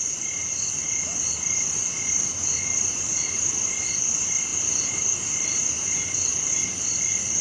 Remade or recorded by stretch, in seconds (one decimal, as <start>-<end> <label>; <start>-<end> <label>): 0.0-2.3 recorded; 2.3-3.8 remade; 3.8-4.5 recorded; 4.5-6.8 remade; 6.8-7.4 recorded